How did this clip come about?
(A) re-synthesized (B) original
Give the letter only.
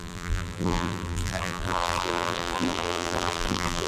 A